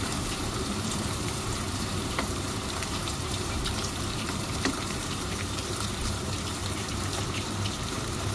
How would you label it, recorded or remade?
remade